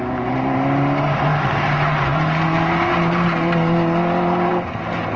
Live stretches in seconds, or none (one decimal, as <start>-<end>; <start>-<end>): 0.0-5.2